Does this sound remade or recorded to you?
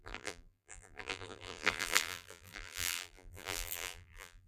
remade